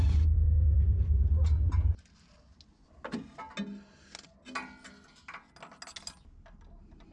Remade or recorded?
recorded